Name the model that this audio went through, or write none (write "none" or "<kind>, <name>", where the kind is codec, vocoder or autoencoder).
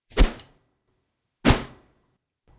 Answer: none